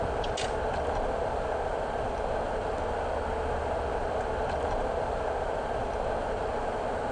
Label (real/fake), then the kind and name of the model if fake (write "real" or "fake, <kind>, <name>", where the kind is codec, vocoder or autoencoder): real